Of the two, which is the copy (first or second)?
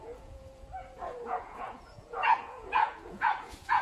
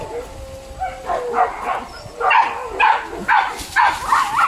first